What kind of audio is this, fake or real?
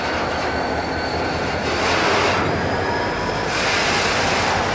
real